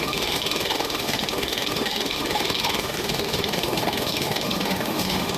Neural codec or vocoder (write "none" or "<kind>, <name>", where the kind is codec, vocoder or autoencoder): autoencoder, DAC-VAE